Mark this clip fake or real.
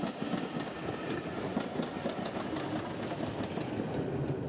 real